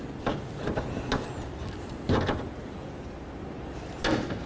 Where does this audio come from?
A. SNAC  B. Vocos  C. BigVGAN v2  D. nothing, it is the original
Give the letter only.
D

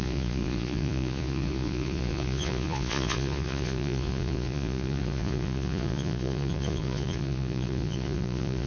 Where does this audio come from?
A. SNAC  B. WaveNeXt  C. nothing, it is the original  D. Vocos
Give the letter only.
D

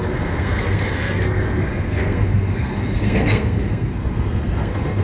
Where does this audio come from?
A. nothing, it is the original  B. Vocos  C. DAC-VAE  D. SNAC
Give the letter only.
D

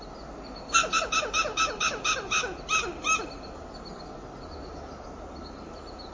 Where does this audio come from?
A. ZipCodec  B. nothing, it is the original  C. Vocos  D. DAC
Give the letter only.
B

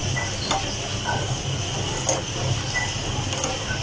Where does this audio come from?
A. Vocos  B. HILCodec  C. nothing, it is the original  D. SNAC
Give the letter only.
C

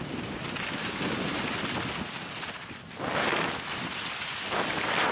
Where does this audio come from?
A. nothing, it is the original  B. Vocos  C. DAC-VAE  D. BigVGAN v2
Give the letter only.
A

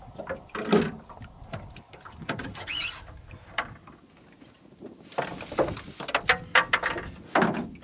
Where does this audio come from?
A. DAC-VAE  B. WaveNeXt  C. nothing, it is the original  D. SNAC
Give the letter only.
C